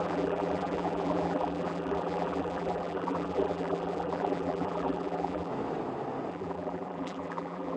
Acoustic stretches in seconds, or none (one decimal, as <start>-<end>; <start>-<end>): 5.5-6.3